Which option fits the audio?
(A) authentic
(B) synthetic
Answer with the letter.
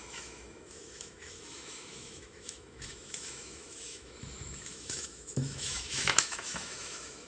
B